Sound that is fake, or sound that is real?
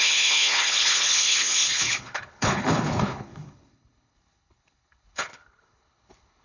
fake